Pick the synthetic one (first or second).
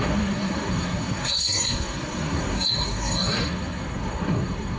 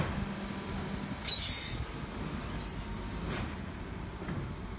first